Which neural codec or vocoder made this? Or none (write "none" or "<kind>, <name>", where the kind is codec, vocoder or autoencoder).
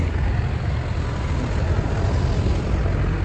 none